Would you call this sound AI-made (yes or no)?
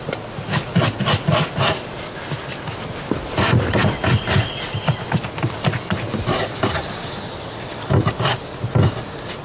no